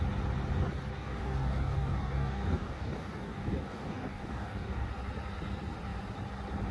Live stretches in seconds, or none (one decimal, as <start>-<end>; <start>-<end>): 0.0-0.9; 4.9-6.7